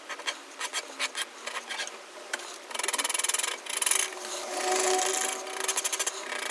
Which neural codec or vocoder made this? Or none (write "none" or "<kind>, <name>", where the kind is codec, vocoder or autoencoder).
none